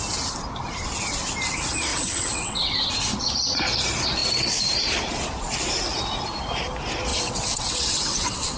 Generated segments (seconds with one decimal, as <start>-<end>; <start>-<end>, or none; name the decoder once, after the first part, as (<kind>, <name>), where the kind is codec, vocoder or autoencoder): 1.9-2.9 (vocoder, WaveNeXt); 7.1-8.6